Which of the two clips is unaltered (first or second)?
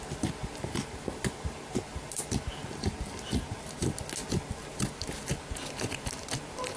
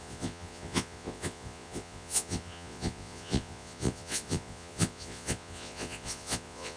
first